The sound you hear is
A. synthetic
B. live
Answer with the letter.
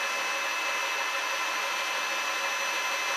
B